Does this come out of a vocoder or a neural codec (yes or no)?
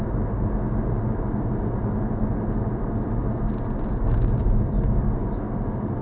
no